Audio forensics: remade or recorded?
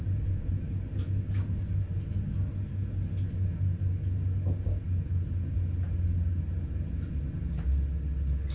recorded